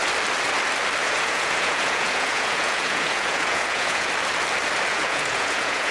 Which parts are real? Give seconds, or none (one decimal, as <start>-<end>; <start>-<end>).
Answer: 0.0-1.0; 4.1-4.9